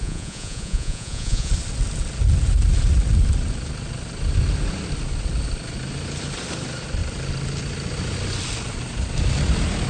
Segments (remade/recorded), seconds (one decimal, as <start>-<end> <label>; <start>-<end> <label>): 0.0-1.5 remade; 1.5-9.9 recorded